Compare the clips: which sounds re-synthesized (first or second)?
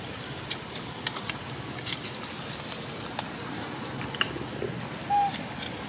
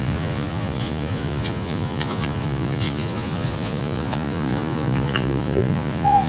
second